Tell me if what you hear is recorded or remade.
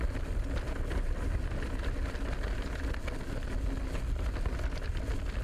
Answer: recorded